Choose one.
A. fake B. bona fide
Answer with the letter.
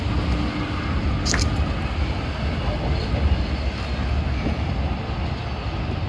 B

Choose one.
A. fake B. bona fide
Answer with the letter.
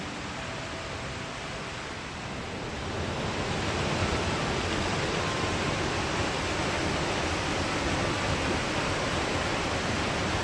B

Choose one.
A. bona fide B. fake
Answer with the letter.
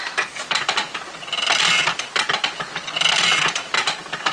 A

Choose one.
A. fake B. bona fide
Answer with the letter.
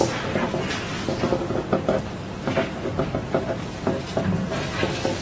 B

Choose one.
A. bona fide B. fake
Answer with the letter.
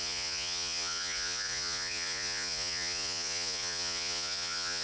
B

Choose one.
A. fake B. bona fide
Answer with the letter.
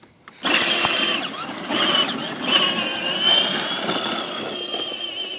B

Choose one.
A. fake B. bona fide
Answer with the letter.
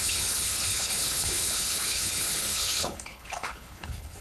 A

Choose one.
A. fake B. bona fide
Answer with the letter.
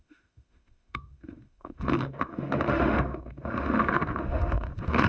A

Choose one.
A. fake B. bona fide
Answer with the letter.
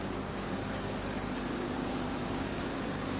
A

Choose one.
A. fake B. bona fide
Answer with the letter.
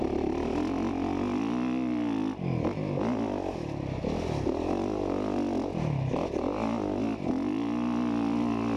B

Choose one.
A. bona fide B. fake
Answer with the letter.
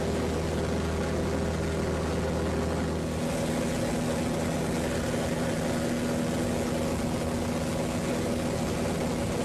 A